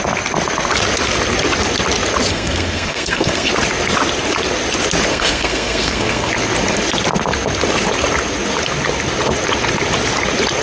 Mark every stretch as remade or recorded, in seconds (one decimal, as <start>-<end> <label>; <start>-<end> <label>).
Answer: 0.0-2.3 recorded; 2.3-3.5 remade; 3.5-5.1 recorded; 5.1-6.3 remade; 6.3-10.6 recorded